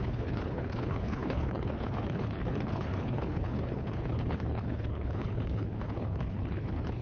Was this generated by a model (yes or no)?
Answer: yes